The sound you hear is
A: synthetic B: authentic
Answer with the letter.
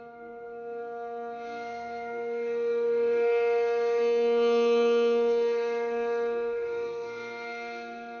A